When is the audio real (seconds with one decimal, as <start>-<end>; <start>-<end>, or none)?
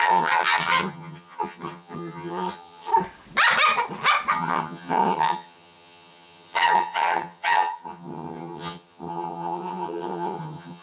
2.9-4.3